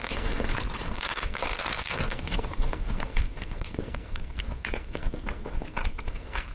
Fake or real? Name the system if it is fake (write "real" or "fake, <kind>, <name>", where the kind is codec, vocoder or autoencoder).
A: fake, codec, SNAC